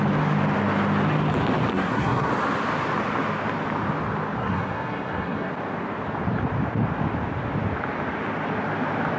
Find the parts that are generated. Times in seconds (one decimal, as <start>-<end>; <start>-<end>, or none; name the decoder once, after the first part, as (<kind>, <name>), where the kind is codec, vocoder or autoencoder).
1.7-2.3 (codec, SNAC); 4.4-5.5